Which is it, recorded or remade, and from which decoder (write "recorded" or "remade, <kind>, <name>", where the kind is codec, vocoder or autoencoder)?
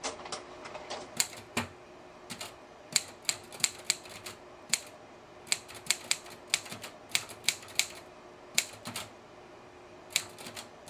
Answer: recorded